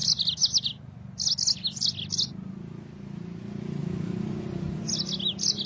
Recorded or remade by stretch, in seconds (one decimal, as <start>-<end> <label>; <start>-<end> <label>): 0.0-5.7 recorded